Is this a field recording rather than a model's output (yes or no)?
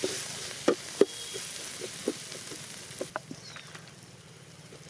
yes